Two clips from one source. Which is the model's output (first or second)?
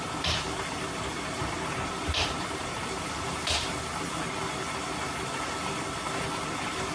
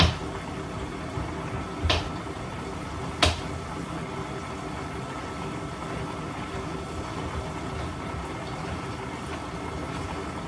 first